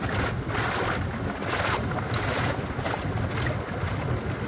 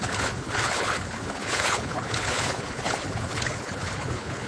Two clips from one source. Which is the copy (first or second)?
second